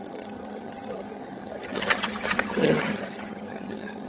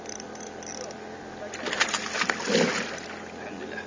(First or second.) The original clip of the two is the second